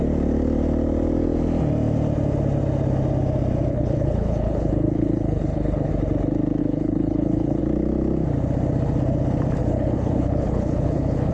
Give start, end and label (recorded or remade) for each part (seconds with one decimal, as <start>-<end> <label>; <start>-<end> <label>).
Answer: 0.0-3.7 recorded; 3.7-5.9 remade; 5.9-6.6 recorded; 6.6-7.6 remade; 7.6-9.6 recorded; 9.6-11.3 remade